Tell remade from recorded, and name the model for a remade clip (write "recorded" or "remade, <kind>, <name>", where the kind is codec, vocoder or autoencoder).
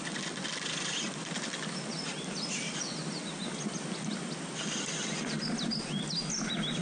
recorded